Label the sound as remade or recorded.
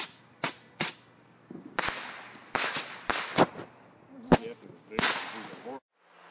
recorded